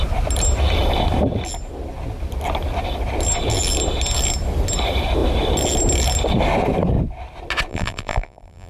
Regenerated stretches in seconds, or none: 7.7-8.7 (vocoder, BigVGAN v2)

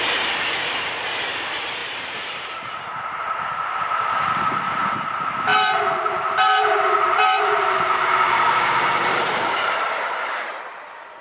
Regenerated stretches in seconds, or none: 0.0-11.2 (vocoder, BigVGAN v2)

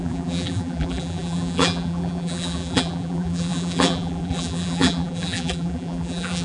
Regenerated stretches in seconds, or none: 0.0-6.4 (vocoder, BigVGAN v2)

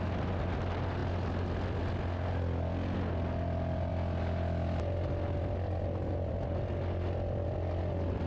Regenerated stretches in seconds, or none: none

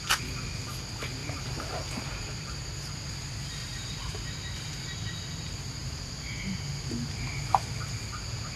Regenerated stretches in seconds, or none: 1.2-2.9 (vocoder, BigVGAN v2); 3.6-4.7; 5.8-6.7

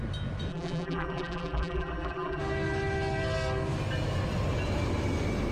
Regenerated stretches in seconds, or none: 0.5-2.4 (vocoder, BigVGAN v2)